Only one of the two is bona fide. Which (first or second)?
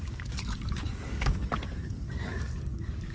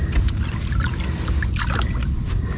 second